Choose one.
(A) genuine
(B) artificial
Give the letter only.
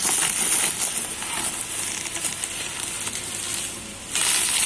A